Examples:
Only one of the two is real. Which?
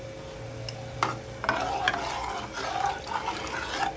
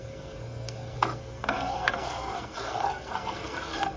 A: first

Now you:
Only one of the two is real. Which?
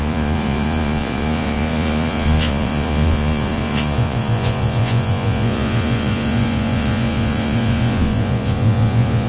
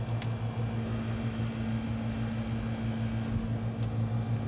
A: second